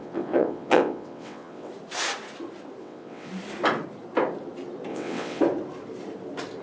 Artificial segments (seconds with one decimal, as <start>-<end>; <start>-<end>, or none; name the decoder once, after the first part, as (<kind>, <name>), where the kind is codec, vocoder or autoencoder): 0.0-1.7 (vocoder, WaveNeXt); 2.8-3.3; 4.9-5.4